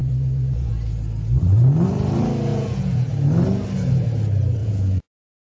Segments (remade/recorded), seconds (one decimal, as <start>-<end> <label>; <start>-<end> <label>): 0.0-0.7 remade; 0.7-2.5 recorded; 2.5-3.1 remade; 3.1-4.6 recorded; 4.6-5.5 remade